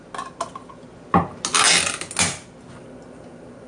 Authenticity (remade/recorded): recorded